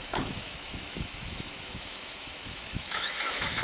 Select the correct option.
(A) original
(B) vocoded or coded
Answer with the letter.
B